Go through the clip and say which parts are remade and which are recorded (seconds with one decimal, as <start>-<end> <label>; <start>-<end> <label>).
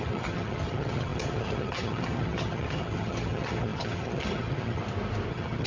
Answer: 0.0-4.8 remade; 4.8-5.3 recorded; 5.3-5.7 remade